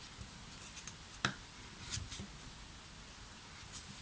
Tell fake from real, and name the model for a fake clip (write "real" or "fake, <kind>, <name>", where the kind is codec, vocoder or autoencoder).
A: real